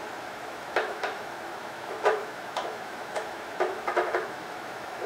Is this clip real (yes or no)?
no